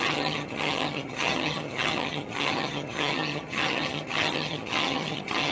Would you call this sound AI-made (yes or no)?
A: yes